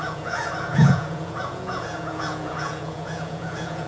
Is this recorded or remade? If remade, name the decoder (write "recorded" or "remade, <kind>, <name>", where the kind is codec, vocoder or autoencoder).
remade, vocoder, Vocos